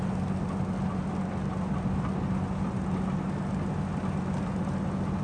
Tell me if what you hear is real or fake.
real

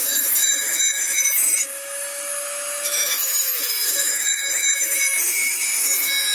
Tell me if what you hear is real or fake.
fake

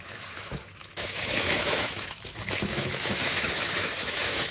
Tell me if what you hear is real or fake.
fake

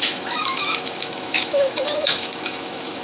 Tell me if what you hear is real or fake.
fake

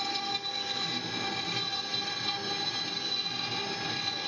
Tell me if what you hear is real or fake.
real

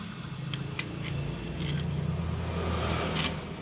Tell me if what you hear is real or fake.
real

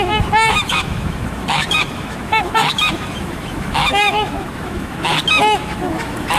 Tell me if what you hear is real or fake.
fake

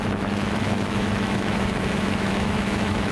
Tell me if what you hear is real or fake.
fake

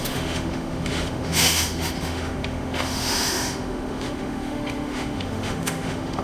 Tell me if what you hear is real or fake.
fake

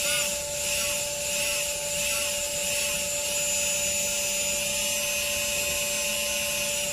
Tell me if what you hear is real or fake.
real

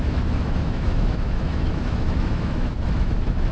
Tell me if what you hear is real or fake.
fake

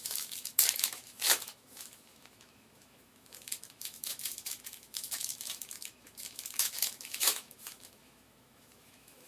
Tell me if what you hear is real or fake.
fake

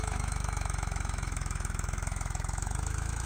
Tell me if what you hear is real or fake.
fake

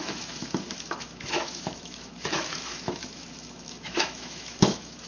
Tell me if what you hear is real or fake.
fake